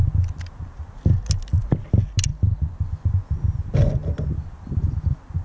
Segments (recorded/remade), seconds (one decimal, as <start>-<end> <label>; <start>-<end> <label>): 0.0-5.4 recorded